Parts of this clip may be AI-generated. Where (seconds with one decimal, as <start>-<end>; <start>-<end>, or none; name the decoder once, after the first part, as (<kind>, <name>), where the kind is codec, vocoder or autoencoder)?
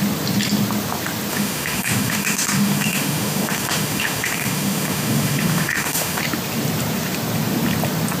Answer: 1.3-6.2 (autoencoder, DAC-VAE)